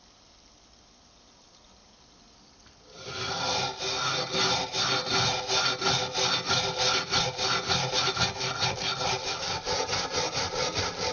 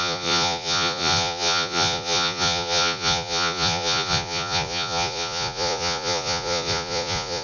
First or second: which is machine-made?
second